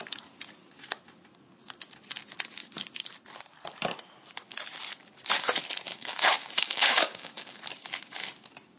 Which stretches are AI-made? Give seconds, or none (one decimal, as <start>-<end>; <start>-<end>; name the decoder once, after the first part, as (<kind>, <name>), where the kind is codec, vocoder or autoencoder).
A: 5.9-7.6 (codec, DAC)